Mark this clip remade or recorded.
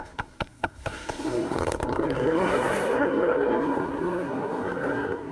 remade